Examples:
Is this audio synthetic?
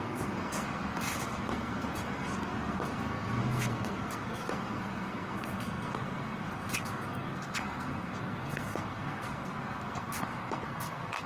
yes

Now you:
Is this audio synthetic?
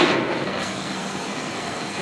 yes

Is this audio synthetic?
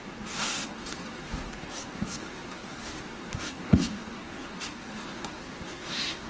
yes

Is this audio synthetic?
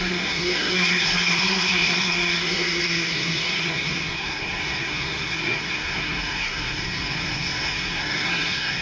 yes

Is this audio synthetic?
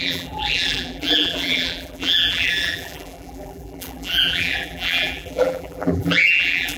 yes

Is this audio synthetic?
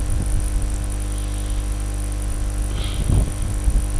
no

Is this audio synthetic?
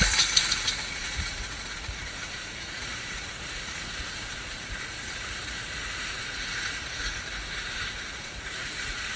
yes